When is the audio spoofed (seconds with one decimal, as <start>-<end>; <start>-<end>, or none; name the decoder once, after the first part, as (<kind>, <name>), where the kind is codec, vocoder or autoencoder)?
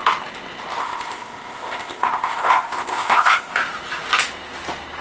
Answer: 0.8-3.6 (codec, ZipCodec)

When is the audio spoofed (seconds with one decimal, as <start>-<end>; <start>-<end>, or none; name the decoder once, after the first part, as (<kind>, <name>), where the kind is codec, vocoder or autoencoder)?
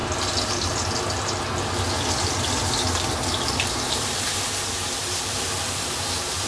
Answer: 3.9-4.3 (vocoder, BigVGAN v2); 5.0-6.5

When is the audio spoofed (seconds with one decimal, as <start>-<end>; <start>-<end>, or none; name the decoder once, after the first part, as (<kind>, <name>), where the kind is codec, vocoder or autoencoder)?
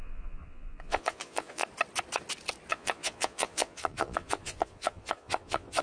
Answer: 0.0-1.6 (vocoder, Vocos); 2.7-5.8